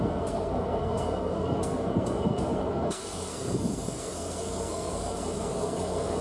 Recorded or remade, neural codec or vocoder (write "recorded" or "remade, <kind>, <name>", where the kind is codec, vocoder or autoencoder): remade, codec, SNAC